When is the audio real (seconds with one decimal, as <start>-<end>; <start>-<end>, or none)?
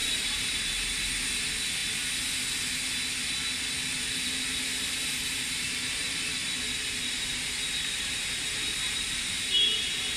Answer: 1.8-4.0; 6.4-8.0